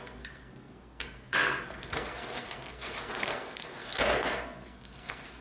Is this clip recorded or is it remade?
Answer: remade